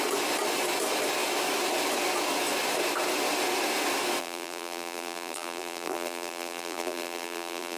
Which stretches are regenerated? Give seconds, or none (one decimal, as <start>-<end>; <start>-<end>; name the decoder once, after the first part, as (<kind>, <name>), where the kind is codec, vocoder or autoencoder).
4.2-7.8 (vocoder, BigVGAN v2)